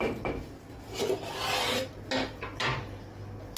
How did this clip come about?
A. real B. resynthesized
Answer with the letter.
A